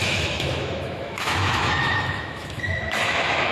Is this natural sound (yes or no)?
no